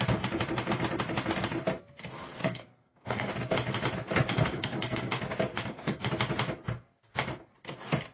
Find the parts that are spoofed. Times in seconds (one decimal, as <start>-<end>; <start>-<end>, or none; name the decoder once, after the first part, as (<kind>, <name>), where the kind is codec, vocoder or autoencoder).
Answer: 2.4-3.3 (codec, SNAC); 4.3-5.1; 5.5-6.1

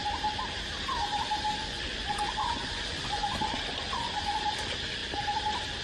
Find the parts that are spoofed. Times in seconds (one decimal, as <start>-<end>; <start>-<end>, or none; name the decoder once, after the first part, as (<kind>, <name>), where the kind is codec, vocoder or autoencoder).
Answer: 1.6-4.6 (vocoder, Vocos)

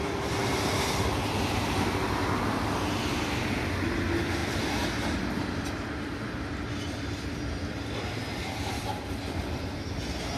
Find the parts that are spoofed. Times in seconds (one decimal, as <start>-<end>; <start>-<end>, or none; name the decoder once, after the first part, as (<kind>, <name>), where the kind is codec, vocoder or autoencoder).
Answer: none

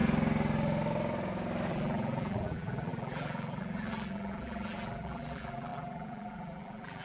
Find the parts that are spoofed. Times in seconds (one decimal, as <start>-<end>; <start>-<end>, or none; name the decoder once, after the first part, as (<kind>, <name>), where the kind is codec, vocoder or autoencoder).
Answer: 1.7-7.0 (vocoder, BigVGAN v2)

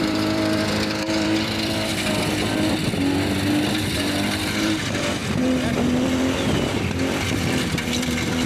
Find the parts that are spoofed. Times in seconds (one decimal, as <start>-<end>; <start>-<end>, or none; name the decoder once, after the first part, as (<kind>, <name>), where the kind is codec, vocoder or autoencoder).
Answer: 0.0-1.9 (vocoder, BigVGAN v2); 3.5-8.5